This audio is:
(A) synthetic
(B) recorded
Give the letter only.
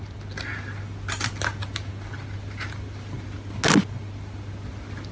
B